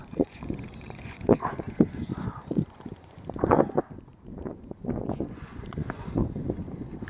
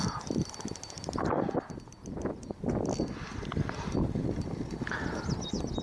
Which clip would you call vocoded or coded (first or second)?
first